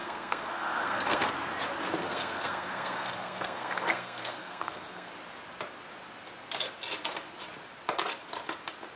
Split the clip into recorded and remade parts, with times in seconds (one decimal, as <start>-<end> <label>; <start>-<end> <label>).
0.0-1.3 remade; 1.3-2.0 recorded; 2.0-5.1 remade; 5.1-9.0 recorded